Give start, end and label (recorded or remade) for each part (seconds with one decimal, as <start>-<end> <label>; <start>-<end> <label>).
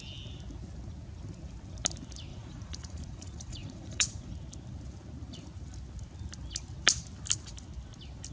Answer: 0.0-2.3 recorded; 2.3-4.3 remade; 4.3-8.3 recorded